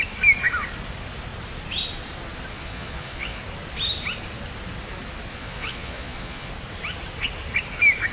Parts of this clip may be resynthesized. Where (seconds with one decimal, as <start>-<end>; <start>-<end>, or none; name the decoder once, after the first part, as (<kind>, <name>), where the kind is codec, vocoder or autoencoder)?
2.5-3.4 (vocoder, Vocos); 5.3-6.5